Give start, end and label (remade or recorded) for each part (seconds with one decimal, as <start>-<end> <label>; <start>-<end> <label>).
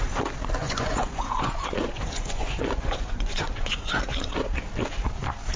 0.0-0.6 recorded; 0.6-4.0 remade; 4.0-5.6 recorded